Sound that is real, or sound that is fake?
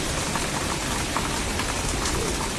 real